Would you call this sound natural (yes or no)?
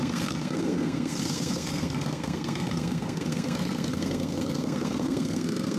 no